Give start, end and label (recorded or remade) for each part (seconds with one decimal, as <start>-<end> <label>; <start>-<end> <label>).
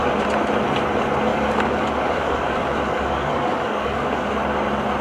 0.0-1.3 recorded; 1.3-4.3 remade; 4.3-5.0 recorded